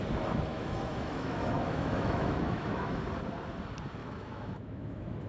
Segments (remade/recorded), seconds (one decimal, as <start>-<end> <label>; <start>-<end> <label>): 0.0-0.5 recorded; 0.5-3.0 remade; 3.0-4.0 recorded; 4.0-5.3 remade